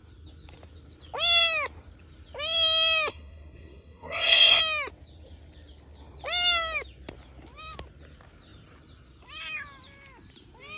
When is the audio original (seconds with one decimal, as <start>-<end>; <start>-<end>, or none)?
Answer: 0.0-3.1; 4.6-10.8